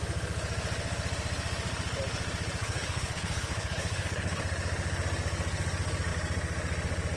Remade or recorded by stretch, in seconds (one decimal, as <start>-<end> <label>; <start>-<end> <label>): 0.0-2.6 recorded; 2.6-4.4 remade; 4.4-7.2 recorded

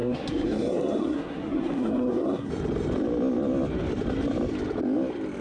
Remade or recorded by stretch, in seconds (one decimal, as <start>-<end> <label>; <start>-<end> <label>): 0.0-2.5 remade; 2.5-5.4 recorded

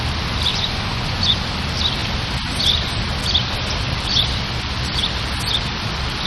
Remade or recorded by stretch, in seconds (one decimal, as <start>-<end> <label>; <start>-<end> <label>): 0.0-0.5 recorded; 0.5-1.4 remade; 1.4-6.3 recorded

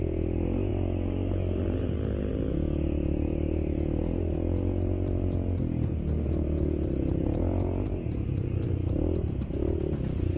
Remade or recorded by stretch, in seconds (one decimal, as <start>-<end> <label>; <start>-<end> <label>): 0.0-10.4 recorded

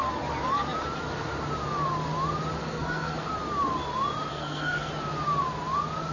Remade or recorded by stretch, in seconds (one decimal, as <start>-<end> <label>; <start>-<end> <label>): 0.0-2.6 recorded; 2.6-3.3 remade; 3.3-4.3 recorded; 4.3-4.9 remade; 4.9-6.1 recorded

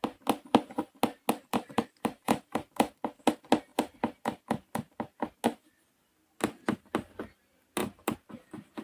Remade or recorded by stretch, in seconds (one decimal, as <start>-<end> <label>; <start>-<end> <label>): 0.0-1.5 recorded; 1.5-3.2 remade; 3.2-7.8 recorded; 7.8-8.3 remade; 8.3-8.8 recorded

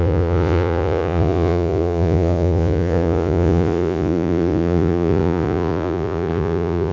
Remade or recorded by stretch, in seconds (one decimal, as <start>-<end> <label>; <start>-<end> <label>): 0.0-6.9 remade